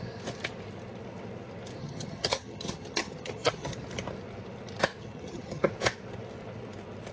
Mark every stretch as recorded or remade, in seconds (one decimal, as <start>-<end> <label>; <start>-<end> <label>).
0.0-1.8 recorded; 1.8-3.7 remade; 3.7-5.0 recorded; 5.0-5.7 remade; 5.7-7.1 recorded